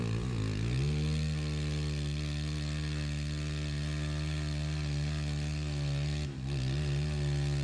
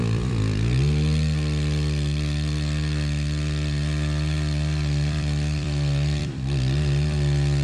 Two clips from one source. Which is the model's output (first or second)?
second